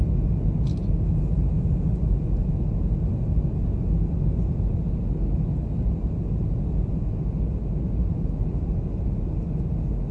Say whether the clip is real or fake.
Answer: real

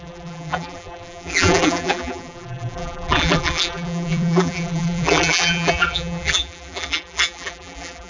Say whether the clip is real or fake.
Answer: fake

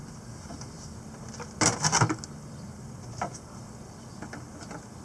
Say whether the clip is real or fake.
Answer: real